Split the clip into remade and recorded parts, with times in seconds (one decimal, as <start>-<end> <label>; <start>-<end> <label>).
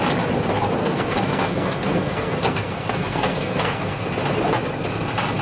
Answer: 0.0-0.8 recorded; 0.8-4.0 remade; 4.0-5.4 recorded